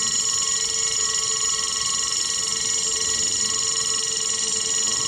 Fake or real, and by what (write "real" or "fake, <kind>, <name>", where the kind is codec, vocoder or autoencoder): real